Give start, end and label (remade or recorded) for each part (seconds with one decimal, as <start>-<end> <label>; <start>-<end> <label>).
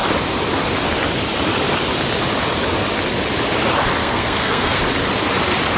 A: 0.0-4.0 recorded; 4.0-4.8 remade; 4.8-5.8 recorded